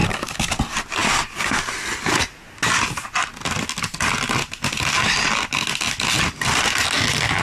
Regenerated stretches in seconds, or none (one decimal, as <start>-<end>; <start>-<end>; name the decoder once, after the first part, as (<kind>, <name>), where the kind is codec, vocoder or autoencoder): 0.0-0.6 (codec, DAC)